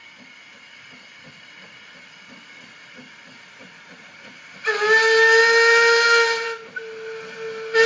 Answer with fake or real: real